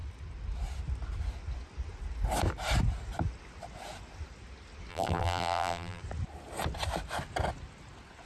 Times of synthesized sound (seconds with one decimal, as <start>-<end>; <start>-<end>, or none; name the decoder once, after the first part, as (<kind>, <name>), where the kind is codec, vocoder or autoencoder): 4.9-6.0 (vocoder, BigVGAN v2)